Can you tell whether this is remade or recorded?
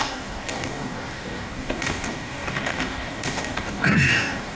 remade